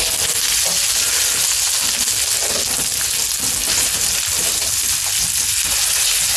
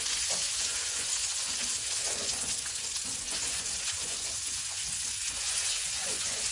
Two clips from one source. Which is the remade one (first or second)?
second